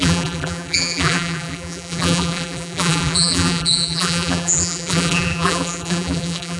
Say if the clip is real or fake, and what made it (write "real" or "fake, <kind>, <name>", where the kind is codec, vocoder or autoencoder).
fake, vocoder, BigVGAN v2